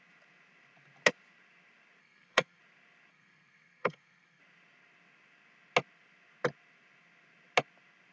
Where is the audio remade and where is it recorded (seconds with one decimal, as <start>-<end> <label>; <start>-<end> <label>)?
0.0-2.0 recorded; 2.0-2.6 remade; 2.6-3.1 recorded; 3.1-4.4 remade; 4.4-8.1 recorded